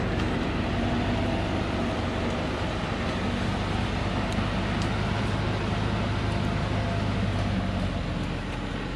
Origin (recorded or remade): recorded